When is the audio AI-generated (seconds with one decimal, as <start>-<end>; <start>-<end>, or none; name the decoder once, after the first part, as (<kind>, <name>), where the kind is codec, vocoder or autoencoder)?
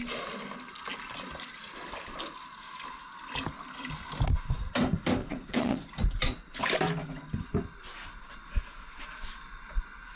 5.2-5.9 (vocoder, Vocos)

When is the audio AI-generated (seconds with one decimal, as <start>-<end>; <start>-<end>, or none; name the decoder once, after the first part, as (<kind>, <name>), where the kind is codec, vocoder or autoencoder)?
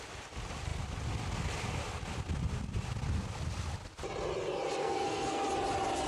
4.8-5.4 (codec, SNAC)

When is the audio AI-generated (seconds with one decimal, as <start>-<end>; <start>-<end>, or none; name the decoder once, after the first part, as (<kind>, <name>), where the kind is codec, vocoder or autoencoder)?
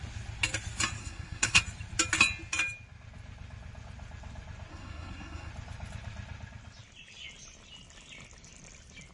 1.0-1.6 (codec, SNAC); 4.7-5.5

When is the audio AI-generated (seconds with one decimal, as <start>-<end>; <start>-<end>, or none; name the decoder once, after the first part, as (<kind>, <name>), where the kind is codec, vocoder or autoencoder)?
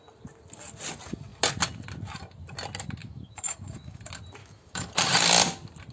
3.0-4.0 (autoencoder, DAC-VAE); 4.4-4.9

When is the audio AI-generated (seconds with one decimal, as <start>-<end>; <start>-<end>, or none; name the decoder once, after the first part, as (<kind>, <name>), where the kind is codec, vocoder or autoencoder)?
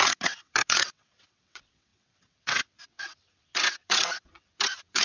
0.0-5.0 (vocoder, WaveNeXt)